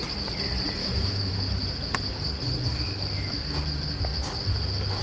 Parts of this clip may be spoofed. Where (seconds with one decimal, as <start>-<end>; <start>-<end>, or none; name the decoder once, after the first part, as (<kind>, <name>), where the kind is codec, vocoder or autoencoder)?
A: 0.8-1.3 (autoencoder, DAC-VAE); 2.7-3.4